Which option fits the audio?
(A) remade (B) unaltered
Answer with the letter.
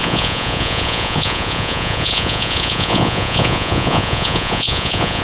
A